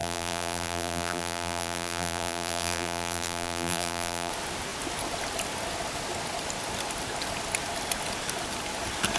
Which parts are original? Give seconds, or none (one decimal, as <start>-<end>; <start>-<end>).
4.3-9.2